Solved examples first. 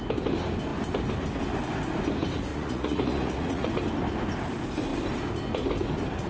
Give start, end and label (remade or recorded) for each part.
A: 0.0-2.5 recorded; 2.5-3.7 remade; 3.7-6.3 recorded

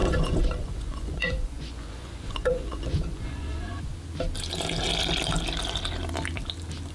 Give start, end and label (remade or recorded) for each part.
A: 0.0-3.9 remade; 3.9-6.9 recorded

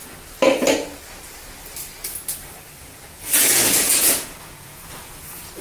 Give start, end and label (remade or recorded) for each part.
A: 0.0-2.8 recorded; 2.8-5.6 remade

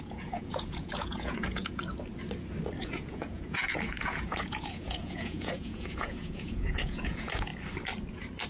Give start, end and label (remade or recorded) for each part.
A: 0.0-1.8 remade; 1.8-2.8 recorded; 2.8-7.5 remade; 7.5-8.5 recorded

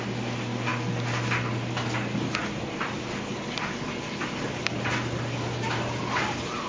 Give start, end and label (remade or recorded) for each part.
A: 0.0-6.7 recorded

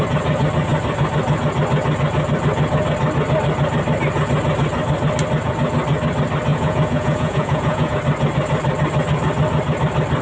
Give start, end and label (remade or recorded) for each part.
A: 0.0-6.5 recorded; 6.5-7.9 remade; 7.9-10.2 recorded

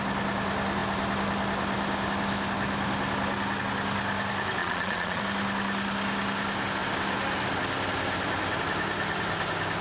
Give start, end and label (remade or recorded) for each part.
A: 0.0-4.6 recorded; 4.6-5.2 remade; 5.2-9.8 recorded